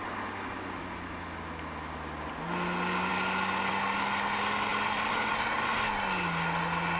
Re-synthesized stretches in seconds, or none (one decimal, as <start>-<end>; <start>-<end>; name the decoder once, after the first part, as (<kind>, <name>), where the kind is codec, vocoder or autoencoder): 0.0-0.8 (vocoder, BigVGAN v2); 4.7-5.3